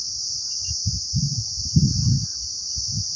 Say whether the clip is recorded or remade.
recorded